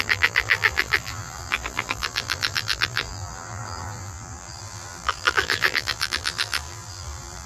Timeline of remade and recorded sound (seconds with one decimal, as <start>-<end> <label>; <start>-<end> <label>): 0.0-7.5 remade